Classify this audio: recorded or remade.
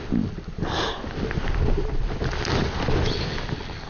recorded